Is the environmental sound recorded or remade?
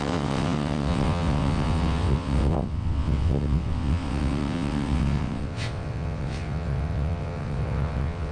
remade